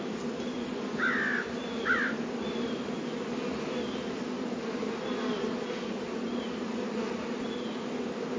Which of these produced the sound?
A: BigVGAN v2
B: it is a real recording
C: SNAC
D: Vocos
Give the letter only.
B